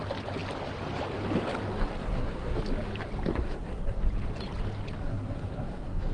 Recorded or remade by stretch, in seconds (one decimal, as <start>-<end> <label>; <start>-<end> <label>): 0.0-1.9 recorded; 1.9-2.6 remade; 2.6-3.3 recorded; 3.3-4.0 remade; 4.0-5.0 recorded; 5.0-6.1 remade